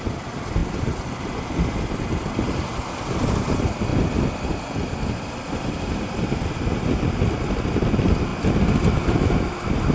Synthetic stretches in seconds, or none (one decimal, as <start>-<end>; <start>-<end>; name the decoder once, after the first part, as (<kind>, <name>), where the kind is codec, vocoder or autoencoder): none